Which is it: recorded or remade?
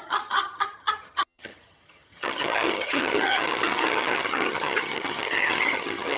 remade